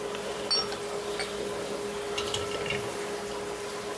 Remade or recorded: recorded